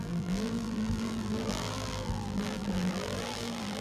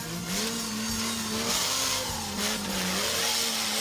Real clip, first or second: second